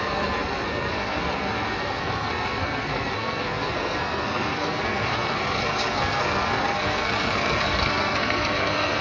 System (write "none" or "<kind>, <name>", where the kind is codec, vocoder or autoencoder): codec, SNAC